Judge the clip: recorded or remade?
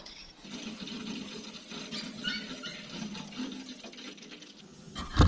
recorded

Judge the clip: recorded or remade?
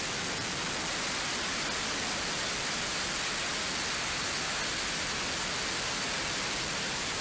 recorded